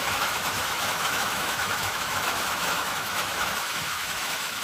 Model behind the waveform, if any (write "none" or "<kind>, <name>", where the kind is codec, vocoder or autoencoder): autoencoder, DAC-VAE